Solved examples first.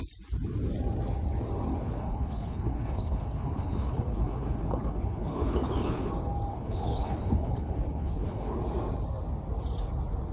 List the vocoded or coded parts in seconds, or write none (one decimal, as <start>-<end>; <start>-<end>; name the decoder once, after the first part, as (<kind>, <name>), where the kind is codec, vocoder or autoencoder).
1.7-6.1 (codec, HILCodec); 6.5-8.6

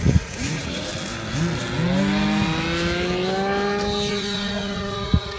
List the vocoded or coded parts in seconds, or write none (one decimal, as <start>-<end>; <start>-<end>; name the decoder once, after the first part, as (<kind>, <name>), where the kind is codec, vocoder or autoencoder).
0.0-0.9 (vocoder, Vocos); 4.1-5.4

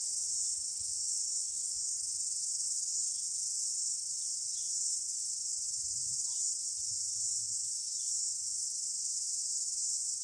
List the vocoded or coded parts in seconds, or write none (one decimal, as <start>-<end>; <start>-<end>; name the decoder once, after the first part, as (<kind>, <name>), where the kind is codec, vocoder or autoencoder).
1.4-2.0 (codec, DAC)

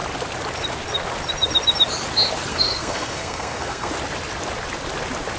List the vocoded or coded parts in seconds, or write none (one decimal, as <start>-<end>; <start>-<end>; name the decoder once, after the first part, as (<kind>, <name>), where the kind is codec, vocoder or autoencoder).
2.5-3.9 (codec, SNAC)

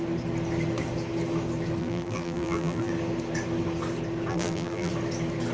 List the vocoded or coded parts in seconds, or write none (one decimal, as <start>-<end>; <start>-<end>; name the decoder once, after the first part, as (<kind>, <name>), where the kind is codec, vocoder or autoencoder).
1.8-2.9 (vocoder, BigVGAN v2); 4.3-4.9

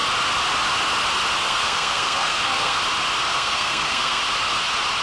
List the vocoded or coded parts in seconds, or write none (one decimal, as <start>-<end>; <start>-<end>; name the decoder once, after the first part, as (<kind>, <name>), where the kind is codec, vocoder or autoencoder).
1.4-2.8 (codec, SNAC); 3.3-4.2